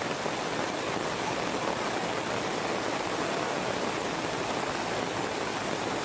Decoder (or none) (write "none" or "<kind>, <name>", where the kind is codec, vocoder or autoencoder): none